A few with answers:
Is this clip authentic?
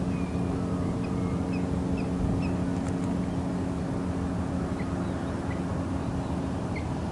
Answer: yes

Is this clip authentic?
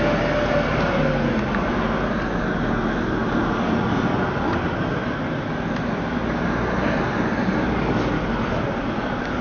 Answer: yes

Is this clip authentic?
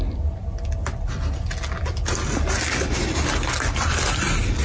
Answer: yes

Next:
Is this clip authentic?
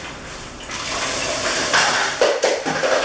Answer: yes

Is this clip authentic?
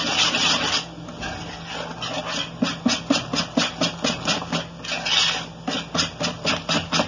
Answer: yes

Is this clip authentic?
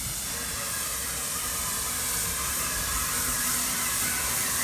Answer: yes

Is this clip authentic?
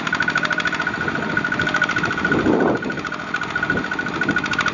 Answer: no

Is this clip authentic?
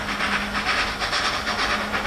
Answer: yes